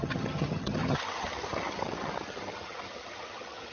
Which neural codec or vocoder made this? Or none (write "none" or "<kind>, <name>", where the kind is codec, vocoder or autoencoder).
vocoder, HiFi-GAN